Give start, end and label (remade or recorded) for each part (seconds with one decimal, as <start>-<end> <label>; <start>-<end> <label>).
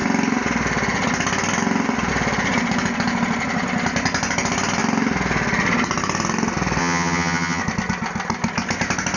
0.0-6.8 recorded; 6.8-7.6 remade; 7.6-9.2 recorded